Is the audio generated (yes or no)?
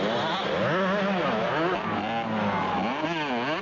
no